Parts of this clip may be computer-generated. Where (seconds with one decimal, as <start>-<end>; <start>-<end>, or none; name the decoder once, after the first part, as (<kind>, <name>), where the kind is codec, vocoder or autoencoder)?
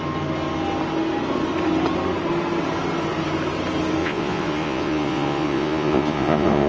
4.0-6.7 (vocoder, Vocos)